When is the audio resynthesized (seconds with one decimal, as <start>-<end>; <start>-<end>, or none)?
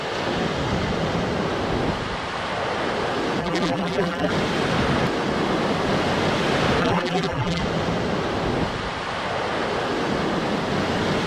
3.4-4.3; 6.8-7.6